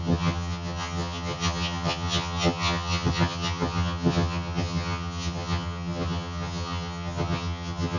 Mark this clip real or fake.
fake